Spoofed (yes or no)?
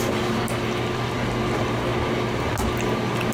no